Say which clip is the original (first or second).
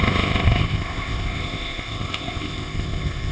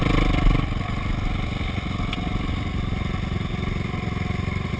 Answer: second